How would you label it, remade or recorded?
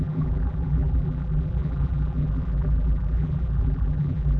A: remade